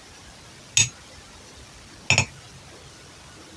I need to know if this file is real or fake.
real